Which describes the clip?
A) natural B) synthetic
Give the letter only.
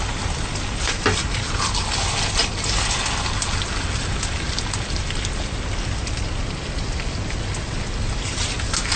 A